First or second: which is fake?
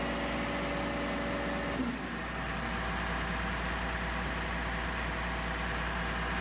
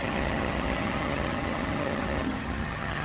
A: second